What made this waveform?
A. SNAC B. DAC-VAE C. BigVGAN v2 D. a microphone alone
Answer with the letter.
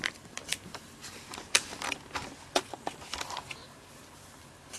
C